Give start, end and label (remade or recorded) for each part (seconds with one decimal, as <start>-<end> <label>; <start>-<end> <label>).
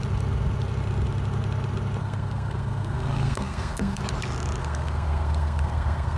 0.0-2.0 recorded; 2.0-4.0 remade; 4.0-4.6 recorded; 4.6-6.2 remade